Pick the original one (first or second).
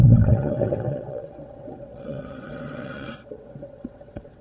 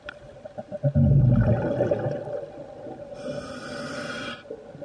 second